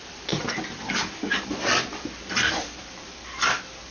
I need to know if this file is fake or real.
fake